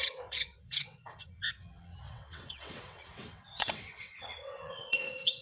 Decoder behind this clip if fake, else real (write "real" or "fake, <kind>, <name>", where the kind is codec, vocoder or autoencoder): fake, vocoder, WaveNeXt